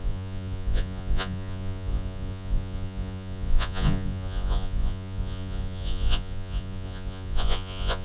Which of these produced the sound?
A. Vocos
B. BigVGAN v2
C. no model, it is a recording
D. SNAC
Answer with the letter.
A